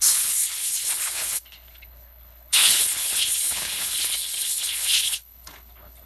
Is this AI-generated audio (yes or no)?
yes